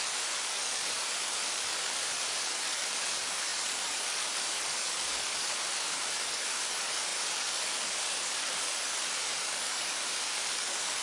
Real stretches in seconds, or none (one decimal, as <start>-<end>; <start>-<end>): none